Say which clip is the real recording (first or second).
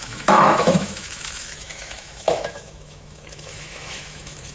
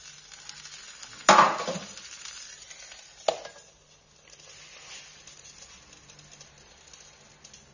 second